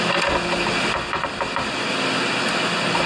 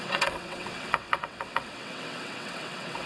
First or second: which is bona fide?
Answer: first